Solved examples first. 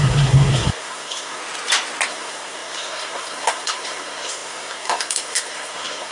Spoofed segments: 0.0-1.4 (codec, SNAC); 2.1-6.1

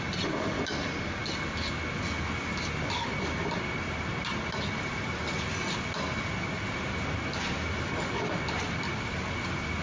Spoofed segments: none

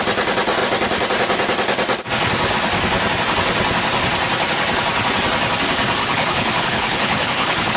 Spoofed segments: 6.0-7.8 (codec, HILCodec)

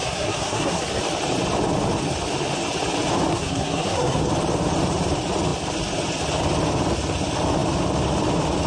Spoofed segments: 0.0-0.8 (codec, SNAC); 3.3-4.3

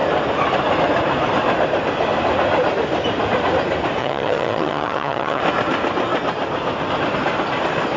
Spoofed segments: 4.0-5.4 (vocoder, HiFi-GAN)